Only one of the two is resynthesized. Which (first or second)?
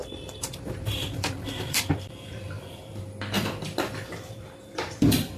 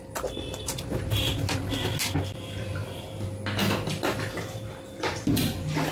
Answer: first